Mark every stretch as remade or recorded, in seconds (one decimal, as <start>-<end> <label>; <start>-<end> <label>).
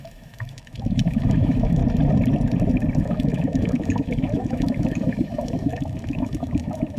0.0-1.8 remade; 1.8-3.0 recorded; 3.0-7.0 remade